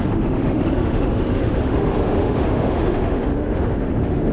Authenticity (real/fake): fake